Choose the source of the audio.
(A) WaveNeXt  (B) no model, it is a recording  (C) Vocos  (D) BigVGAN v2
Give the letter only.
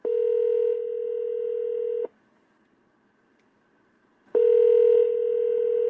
B